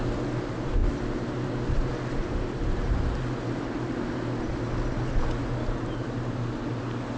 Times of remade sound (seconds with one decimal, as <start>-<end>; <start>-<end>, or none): none